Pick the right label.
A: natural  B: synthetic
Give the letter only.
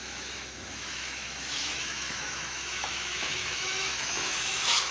B